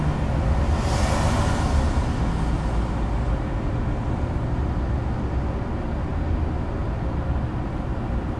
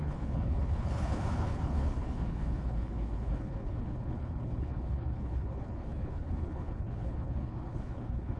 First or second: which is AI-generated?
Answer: second